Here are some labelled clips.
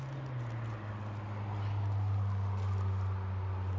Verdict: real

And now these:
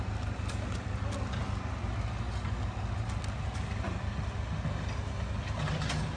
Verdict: real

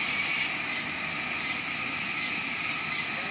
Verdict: real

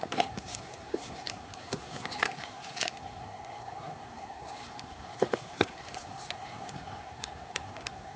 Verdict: fake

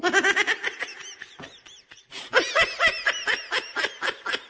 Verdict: real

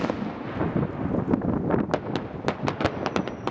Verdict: real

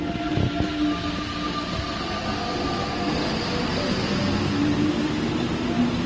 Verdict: real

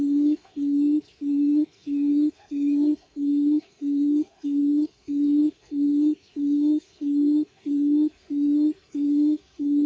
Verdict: fake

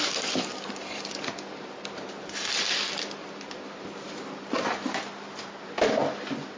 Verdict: real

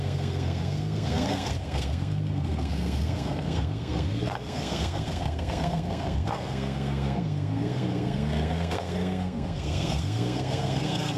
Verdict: fake